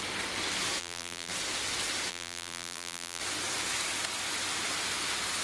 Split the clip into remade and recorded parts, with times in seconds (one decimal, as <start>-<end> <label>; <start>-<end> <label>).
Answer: 0.0-0.8 recorded; 0.8-1.3 remade; 1.3-2.1 recorded; 2.1-3.2 remade; 3.2-5.4 recorded